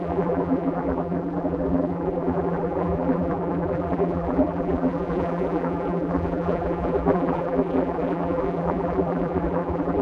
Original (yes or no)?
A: no